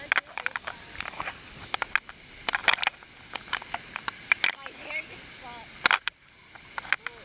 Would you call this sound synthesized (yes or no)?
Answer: no